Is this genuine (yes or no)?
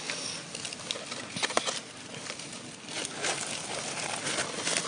yes